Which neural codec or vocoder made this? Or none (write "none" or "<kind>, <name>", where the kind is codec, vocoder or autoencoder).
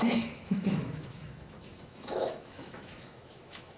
autoencoder, DAC-VAE